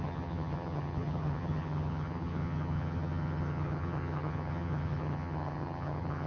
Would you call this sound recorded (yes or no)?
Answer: no